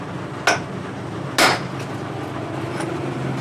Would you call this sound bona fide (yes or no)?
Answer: yes